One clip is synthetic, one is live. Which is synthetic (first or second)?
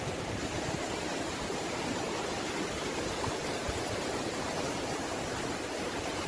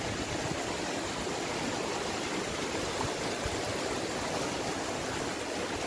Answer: first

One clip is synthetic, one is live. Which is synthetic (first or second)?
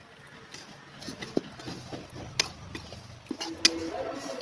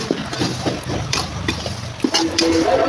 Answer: second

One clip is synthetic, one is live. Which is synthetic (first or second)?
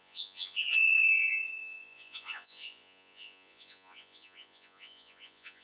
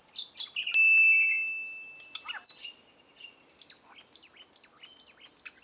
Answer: first